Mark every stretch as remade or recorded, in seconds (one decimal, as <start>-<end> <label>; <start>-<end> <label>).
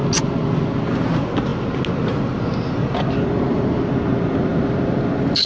0.0-5.5 recorded